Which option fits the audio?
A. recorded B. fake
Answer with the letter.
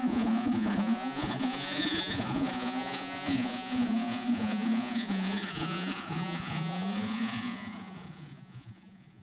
B